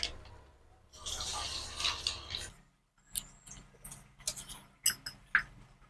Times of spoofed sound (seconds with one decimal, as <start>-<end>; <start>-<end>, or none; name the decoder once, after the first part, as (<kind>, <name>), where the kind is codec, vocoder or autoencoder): none